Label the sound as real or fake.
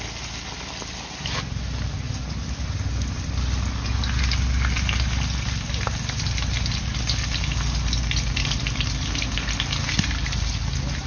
real